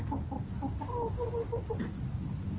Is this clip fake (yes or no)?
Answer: no